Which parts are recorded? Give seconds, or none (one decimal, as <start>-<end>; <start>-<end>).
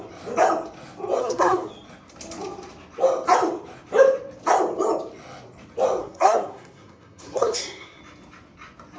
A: 0.0-1.2; 1.7-6.0; 8.0-9.0